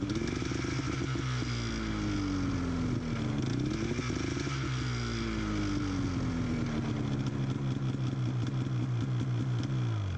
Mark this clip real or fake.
real